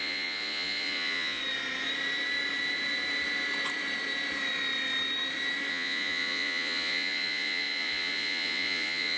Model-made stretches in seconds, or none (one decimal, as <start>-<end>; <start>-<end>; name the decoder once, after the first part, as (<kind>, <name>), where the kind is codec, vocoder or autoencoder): 0.0-1.4 (vocoder, Vocos); 5.7-9.2